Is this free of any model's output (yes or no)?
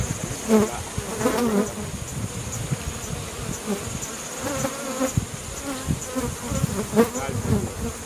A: yes